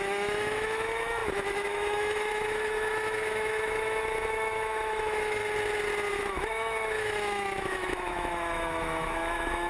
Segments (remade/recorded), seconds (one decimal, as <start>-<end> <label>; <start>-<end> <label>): 0.0-5.4 remade; 5.4-6.1 recorded; 6.1-9.7 remade

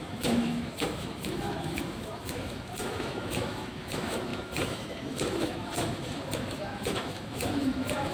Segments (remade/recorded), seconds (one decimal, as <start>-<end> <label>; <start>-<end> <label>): 0.0-8.1 remade

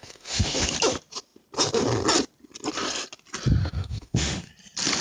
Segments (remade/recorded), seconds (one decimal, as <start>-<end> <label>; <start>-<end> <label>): 0.0-0.7 remade; 0.7-3.6 recorded; 3.6-4.5 remade; 4.5-5.0 recorded

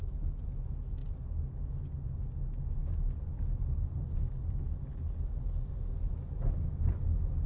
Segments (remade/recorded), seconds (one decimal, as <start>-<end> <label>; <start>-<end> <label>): 0.0-7.5 recorded

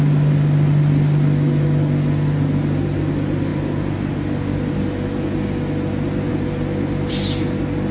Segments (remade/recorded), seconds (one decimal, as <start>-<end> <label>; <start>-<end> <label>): 0.0-7.9 recorded

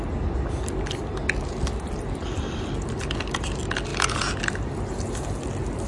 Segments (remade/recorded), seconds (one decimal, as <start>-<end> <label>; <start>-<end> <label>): 0.0-5.9 recorded